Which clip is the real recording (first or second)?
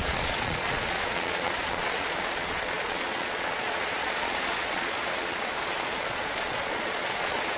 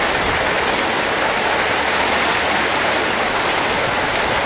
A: second